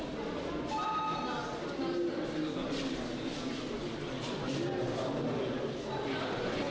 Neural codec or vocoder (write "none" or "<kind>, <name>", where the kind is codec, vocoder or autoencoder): none